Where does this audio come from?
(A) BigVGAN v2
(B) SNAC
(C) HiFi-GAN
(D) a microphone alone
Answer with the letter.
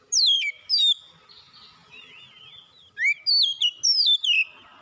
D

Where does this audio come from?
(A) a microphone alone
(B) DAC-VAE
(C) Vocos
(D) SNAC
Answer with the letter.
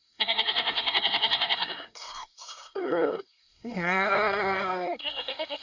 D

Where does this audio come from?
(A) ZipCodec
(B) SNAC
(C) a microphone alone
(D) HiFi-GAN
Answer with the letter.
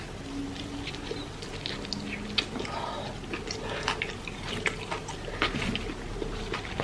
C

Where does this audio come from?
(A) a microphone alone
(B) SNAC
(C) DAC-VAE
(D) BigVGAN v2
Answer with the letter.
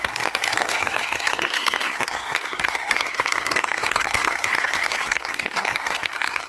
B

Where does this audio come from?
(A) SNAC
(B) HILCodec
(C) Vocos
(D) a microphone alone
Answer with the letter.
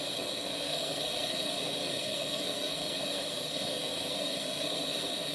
A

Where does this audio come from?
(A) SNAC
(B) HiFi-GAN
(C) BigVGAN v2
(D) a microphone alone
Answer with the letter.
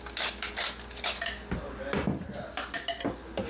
D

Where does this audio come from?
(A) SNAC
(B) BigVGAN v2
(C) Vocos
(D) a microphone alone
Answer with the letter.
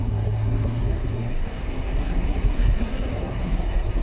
A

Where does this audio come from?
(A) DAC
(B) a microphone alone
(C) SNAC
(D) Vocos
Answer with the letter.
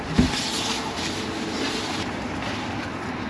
B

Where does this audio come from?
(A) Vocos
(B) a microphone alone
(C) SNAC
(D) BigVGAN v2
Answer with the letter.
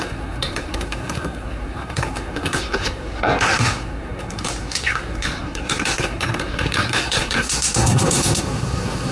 C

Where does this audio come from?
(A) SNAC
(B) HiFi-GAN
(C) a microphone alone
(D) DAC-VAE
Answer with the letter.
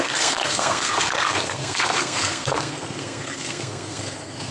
A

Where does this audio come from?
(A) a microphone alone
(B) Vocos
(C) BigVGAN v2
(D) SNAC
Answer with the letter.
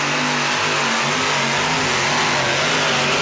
A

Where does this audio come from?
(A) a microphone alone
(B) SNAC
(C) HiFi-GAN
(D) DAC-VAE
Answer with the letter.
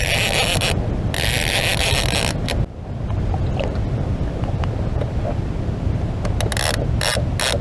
A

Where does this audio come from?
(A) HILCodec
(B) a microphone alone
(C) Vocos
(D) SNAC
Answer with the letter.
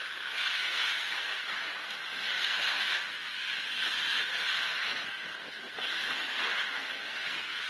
D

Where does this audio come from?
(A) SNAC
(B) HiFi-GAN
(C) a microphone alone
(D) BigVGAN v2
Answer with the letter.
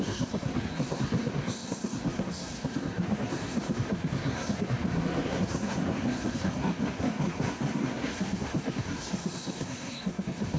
A